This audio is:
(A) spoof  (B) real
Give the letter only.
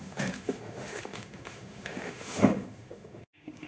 A